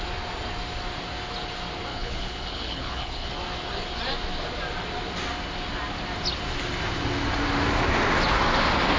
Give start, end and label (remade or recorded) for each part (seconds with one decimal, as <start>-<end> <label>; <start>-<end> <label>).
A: 0.0-1.9 recorded; 1.9-3.3 remade; 3.3-9.0 recorded